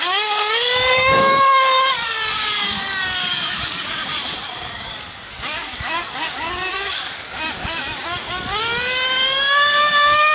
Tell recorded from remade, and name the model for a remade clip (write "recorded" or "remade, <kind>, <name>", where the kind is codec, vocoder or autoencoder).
remade, codec, DAC